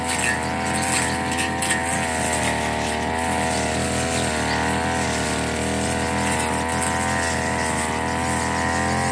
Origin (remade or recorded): recorded